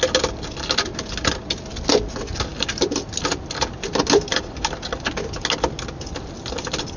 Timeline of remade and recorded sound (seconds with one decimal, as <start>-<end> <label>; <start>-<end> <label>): 0.0-7.0 recorded